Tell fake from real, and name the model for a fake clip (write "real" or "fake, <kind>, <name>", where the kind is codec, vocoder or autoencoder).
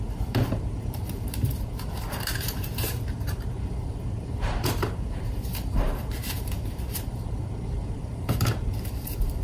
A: fake, vocoder, BigVGAN v2